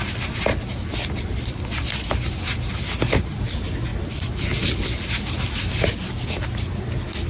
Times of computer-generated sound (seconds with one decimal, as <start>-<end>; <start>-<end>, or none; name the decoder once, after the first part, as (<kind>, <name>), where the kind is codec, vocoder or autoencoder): none